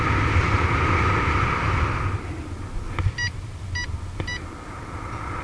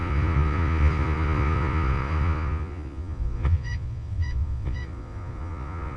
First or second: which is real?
first